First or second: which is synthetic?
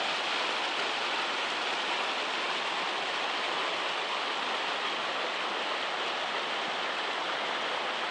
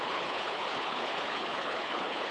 second